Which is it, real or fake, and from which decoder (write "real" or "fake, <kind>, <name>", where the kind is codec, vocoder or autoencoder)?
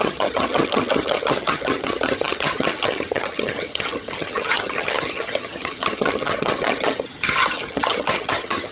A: fake, vocoder, HiFi-GAN